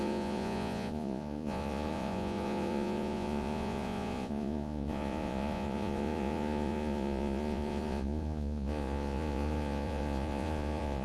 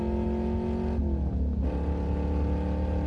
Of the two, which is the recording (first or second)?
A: second